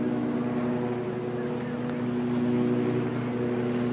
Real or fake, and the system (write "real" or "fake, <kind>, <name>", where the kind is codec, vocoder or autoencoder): real